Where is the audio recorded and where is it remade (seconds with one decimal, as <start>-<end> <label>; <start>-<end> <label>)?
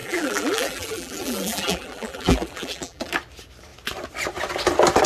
0.0-3.1 remade; 3.1-5.1 recorded